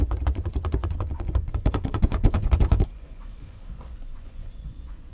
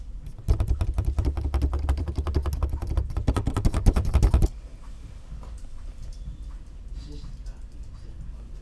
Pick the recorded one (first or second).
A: second